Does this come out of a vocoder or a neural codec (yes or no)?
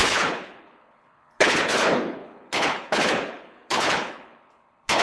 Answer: yes